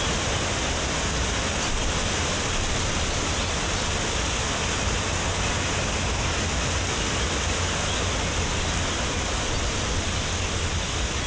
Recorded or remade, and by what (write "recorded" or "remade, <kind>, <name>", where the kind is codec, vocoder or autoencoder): recorded